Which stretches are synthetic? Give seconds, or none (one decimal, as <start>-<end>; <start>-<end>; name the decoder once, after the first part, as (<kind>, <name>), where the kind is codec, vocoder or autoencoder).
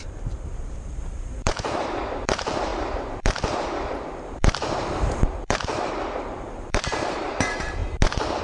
0.0-7.8 (vocoder, BigVGAN v2)